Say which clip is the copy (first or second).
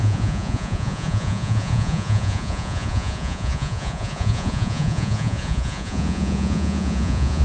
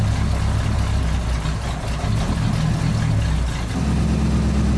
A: first